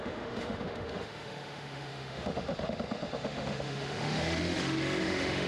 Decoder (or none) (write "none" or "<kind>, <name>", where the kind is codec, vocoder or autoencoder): autoencoder, DAC-VAE